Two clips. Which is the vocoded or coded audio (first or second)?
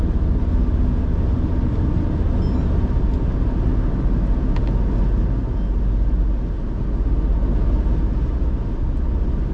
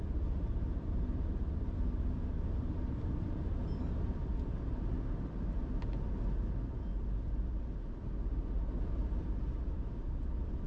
second